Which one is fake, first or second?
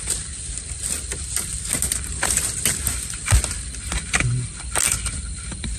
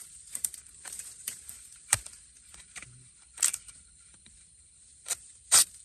second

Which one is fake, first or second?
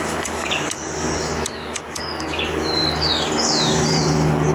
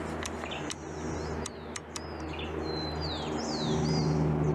first